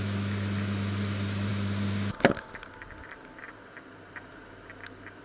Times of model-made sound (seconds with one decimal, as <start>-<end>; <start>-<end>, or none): none